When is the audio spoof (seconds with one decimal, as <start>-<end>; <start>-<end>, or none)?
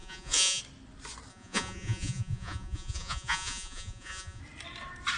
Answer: 0.0-0.6; 1.3-4.4